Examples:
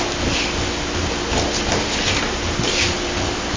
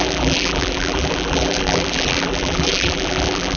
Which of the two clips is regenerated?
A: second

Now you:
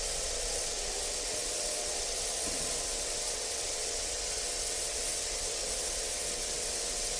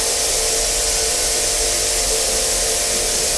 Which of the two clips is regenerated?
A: first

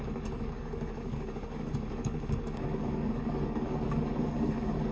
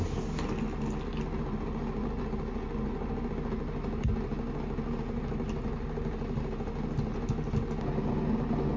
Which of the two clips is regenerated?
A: first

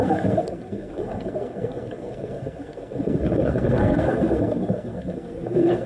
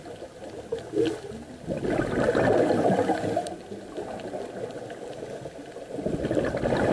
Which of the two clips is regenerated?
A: first